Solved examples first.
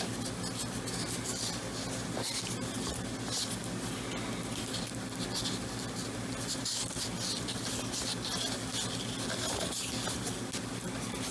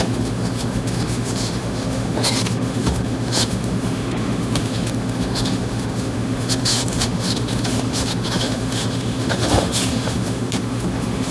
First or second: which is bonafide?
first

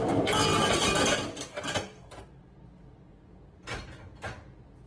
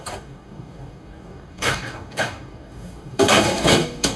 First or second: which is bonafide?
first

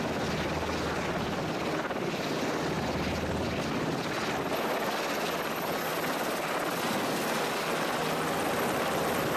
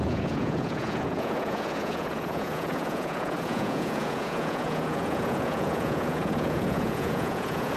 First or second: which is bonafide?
first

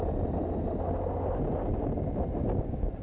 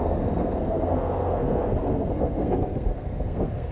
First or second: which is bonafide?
first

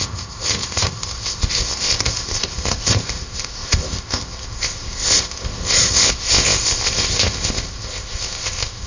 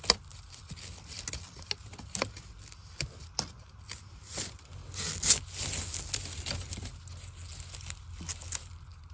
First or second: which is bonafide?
second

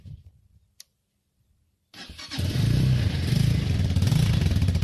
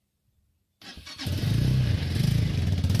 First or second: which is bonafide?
second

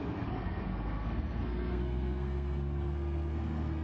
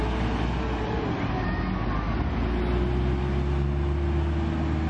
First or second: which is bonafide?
second